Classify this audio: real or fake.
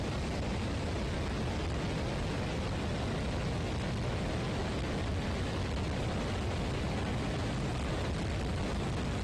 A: real